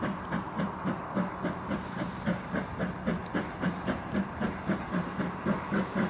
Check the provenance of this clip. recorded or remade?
recorded